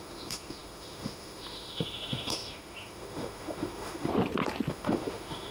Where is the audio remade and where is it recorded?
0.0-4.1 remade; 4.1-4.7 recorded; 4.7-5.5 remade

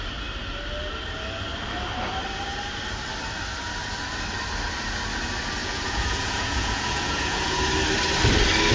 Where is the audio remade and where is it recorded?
0.0-5.6 recorded; 5.6-7.6 remade; 7.6-8.7 recorded

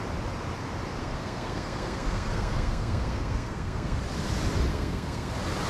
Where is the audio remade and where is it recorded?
0.0-1.0 recorded; 1.0-4.0 remade; 4.0-4.7 recorded; 4.7-5.3 remade; 5.3-5.7 recorded

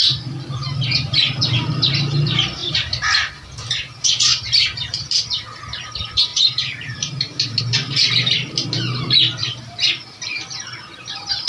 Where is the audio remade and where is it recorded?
0.0-2.6 recorded; 2.6-3.3 remade; 3.3-6.3 recorded; 6.3-7.6 remade; 7.6-9.4 recorded; 9.4-9.9 remade; 9.9-11.5 recorded